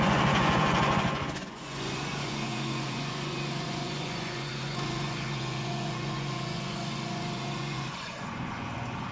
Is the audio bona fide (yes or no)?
no